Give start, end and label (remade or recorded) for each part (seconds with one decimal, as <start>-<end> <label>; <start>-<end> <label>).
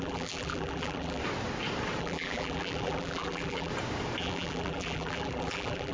0.0-1.2 remade; 1.2-2.0 recorded; 2.0-3.7 remade; 3.7-4.2 recorded; 4.2-5.9 remade